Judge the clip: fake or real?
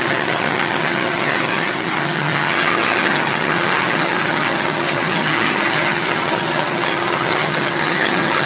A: fake